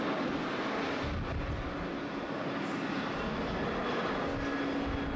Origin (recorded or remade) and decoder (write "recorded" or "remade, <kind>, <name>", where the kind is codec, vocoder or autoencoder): recorded